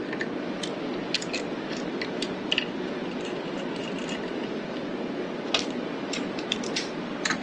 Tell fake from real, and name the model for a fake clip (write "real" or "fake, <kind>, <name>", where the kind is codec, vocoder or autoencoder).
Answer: real